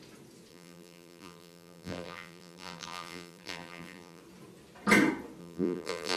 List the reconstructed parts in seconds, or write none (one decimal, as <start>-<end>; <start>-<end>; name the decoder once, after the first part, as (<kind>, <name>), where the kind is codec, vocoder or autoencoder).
0.5-4.2 (vocoder, BigVGAN v2); 5.4-6.2

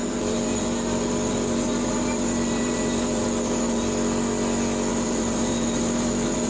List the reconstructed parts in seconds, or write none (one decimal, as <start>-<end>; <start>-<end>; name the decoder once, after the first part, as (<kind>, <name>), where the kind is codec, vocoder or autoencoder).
0.0-3.8 (vocoder, BigVGAN v2); 4.9-6.5

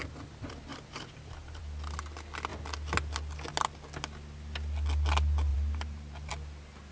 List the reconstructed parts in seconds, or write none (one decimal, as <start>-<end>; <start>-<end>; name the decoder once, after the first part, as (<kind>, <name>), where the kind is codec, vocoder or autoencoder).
0.7-1.6 (vocoder, BigVGAN v2); 5.5-6.3

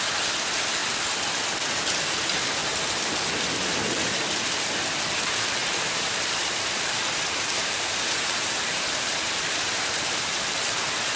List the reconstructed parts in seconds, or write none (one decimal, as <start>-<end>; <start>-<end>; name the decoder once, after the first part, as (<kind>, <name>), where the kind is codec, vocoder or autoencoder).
5.6-10.0 (vocoder, BigVGAN v2)

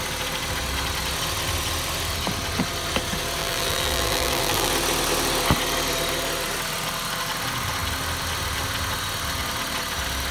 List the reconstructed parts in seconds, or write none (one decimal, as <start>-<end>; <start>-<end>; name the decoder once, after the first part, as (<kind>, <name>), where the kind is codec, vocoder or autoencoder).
3.4-4.7 (vocoder, BigVGAN v2)

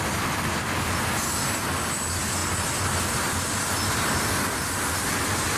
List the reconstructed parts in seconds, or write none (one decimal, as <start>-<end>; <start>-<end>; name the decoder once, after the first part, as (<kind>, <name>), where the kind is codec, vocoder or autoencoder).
none